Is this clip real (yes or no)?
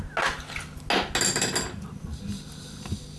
yes